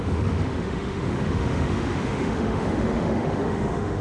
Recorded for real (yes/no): no